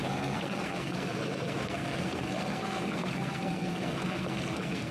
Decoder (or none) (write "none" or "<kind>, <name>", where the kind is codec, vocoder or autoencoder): codec, SNAC